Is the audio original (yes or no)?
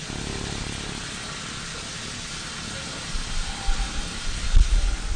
yes